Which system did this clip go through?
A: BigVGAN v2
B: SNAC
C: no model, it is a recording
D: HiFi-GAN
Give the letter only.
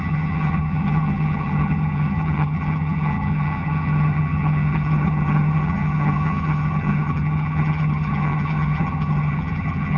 D